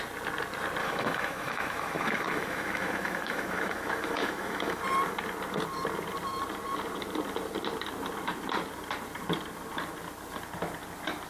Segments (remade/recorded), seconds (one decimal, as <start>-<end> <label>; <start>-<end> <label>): 0.0-0.8 recorded; 0.8-4.8 remade; 4.8-11.3 recorded